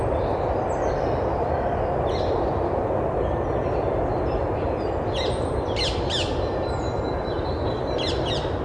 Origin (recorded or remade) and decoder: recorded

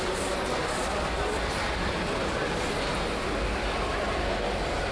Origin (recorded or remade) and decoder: recorded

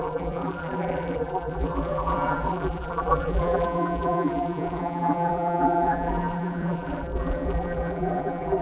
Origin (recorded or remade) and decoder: remade, vocoder, BigVGAN v2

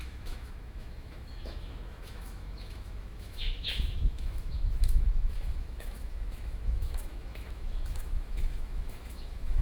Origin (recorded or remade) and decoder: remade, autoencoder, DAC-VAE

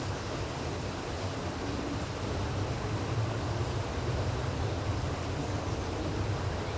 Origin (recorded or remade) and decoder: recorded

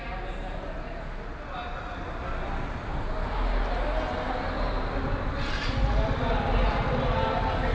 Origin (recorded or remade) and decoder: recorded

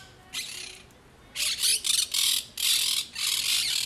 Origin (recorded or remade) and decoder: recorded